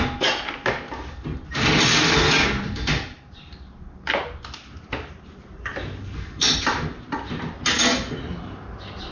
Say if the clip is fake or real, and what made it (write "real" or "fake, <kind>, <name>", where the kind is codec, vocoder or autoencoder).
real